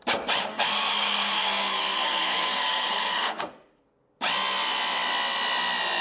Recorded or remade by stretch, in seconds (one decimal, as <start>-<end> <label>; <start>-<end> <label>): 0.0-0.5 recorded; 0.5-3.5 remade; 3.5-6.0 recorded

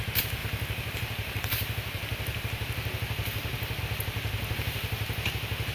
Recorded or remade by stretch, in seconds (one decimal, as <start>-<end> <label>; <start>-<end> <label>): 0.0-0.4 recorded; 0.4-3.8 remade; 3.8-5.7 recorded

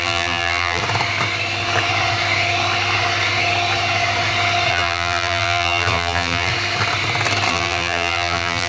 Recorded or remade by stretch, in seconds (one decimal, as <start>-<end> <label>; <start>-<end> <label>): 0.0-0.8 remade; 0.8-4.7 recorded; 4.7-6.5 remade; 6.5-7.5 recorded; 7.5-8.7 remade

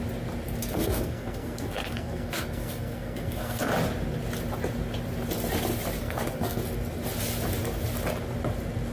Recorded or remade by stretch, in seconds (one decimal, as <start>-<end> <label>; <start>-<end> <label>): 0.0-0.6 recorded; 0.6-3.7 remade; 3.7-6.0 recorded; 6.0-6.6 remade; 6.6-8.9 recorded

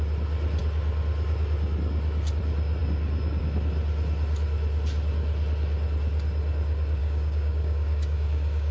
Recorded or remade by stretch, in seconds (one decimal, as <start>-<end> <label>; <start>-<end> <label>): 0.0-7.0 recorded; 7.0-8.7 remade

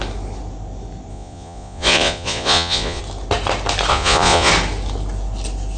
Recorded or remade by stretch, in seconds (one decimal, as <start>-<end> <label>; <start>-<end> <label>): 0.0-1.1 recorded; 1.1-3.0 remade; 3.0-3.9 recorded; 3.9-4.5 remade; 4.5-5.8 recorded